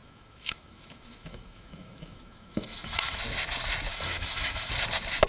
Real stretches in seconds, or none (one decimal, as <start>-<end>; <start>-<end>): 3.2-3.9; 4.7-5.3